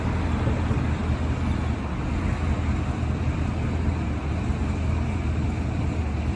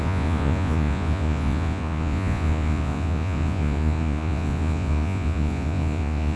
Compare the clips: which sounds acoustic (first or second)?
first